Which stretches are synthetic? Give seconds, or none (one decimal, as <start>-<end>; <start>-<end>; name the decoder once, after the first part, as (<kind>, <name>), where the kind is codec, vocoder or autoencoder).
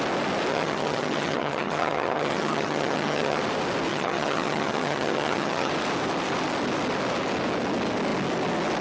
0.5-3.4 (vocoder, HiFi-GAN); 3.9-5.7